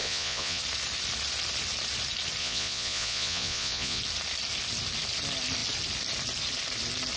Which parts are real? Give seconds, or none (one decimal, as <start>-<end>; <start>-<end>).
0.6-2.4; 4.0-7.2